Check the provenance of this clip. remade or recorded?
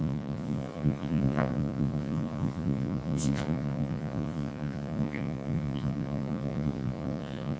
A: remade